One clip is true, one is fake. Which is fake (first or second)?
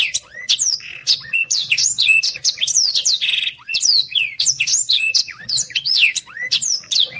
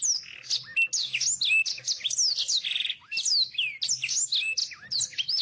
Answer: first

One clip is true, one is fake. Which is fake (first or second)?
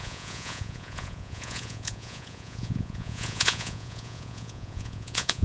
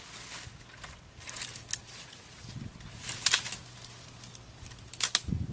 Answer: first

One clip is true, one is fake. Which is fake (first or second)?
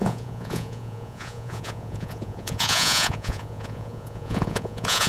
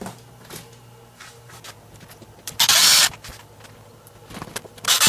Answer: first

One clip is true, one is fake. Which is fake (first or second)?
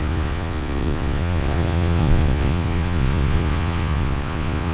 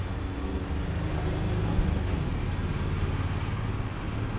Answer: first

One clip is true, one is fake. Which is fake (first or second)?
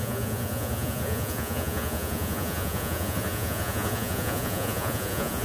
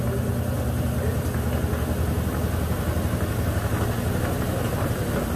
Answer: first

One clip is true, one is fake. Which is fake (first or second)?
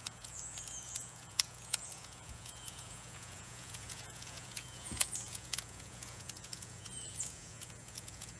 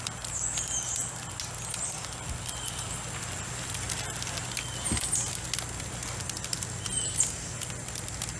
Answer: first